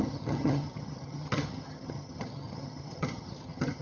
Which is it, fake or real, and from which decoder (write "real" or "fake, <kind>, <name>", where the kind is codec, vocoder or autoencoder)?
fake, vocoder, HiFi-GAN